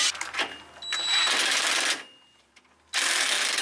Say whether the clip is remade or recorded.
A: recorded